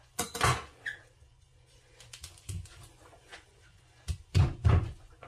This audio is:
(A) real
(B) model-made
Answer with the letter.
B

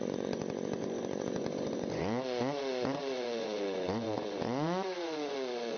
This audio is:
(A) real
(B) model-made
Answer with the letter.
B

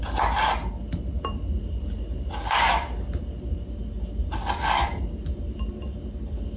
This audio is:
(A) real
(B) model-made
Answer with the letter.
A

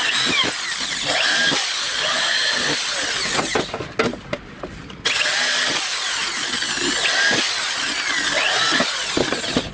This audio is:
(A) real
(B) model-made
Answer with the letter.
A